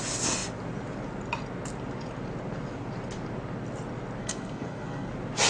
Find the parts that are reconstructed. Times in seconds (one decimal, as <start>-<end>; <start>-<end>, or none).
4.2-5.1